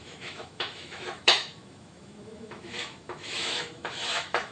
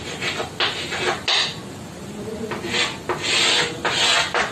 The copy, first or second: first